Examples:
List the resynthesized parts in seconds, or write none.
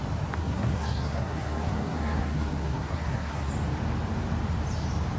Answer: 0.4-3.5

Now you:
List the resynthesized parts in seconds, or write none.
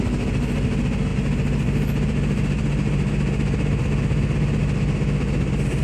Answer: none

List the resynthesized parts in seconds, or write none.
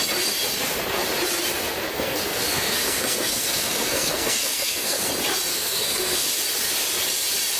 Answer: 1.9-5.1; 5.5-6.3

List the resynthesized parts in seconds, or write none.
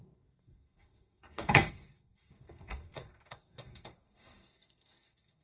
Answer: 0.0-5.4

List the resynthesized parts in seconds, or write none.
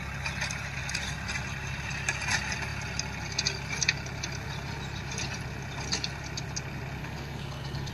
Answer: 7.0-7.9